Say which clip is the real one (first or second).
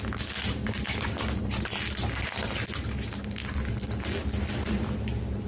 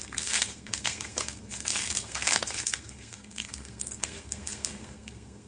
first